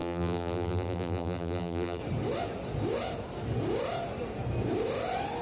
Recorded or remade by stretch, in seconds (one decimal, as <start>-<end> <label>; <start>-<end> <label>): 0.0-2.0 remade; 2.0-5.4 recorded